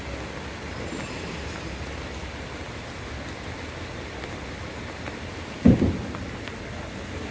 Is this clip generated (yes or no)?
no